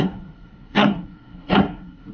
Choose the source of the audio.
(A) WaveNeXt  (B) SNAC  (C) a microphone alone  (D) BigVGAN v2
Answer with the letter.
B